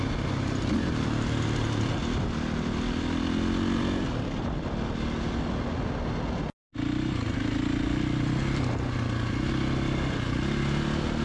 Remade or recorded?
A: recorded